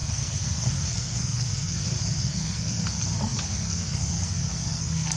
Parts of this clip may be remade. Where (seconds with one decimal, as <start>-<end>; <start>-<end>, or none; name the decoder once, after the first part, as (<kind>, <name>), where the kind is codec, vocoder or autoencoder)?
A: 0.0-5.2 (codec, SNAC)